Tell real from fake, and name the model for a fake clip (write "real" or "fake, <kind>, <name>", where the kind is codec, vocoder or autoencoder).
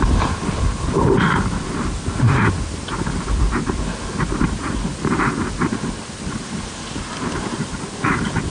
real